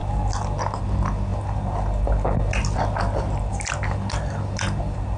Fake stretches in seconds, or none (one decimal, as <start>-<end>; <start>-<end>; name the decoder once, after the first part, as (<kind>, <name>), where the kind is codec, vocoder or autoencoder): none